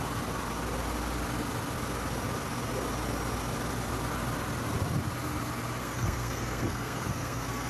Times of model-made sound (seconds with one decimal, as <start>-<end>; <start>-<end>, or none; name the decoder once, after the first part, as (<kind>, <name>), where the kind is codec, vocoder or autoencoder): 5.8-7.7 (codec, SNAC)